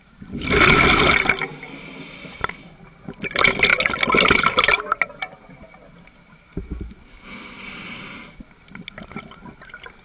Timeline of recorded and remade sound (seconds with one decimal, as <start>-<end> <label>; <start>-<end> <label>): 0.0-10.0 recorded